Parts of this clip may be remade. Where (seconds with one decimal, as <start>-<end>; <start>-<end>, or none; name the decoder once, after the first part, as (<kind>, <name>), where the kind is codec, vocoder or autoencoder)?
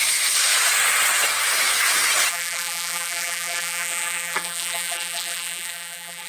2.3-6.3 (vocoder, BigVGAN v2)